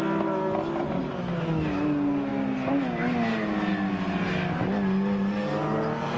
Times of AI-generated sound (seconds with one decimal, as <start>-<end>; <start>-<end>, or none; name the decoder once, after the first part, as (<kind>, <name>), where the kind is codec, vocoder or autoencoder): none

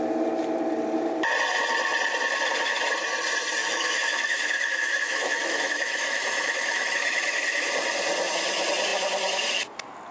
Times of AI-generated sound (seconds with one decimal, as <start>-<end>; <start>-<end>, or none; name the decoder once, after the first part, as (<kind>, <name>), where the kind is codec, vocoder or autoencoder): 3.6-7.7 (autoencoder, DAC-VAE)

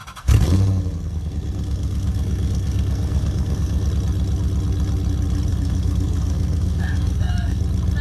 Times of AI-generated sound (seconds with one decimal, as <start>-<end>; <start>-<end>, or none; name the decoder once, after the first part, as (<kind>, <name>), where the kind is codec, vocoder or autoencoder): 0.0-3.9 (codec, SNAC); 5.5-7.6

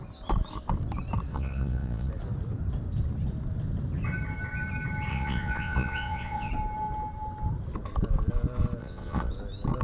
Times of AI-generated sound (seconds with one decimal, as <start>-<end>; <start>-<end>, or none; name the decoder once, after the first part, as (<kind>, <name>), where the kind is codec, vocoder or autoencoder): 1.3-2.1 (vocoder, Vocos); 5.1-6.5; 8.8-9.3

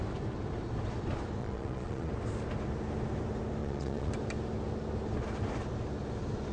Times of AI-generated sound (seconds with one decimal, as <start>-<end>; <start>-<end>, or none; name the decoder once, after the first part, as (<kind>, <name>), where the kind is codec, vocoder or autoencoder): 1.4-2.1 (vocoder, Vocos); 3.6-4.1

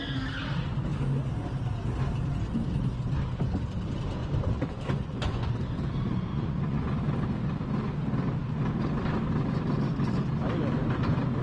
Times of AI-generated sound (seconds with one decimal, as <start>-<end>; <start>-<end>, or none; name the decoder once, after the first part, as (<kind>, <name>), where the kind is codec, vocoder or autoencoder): 4.2-5.5 (vocoder, Vocos); 6.3-7.0